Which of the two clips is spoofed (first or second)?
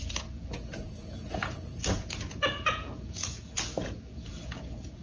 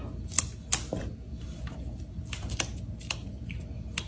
first